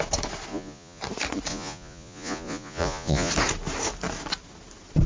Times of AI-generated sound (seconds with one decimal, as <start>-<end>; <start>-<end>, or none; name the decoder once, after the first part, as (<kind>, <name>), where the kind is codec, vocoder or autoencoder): 0.5-1.0 (vocoder, Vocos); 1.5-3.3